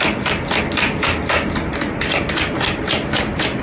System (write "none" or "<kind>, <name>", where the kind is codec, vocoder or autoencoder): none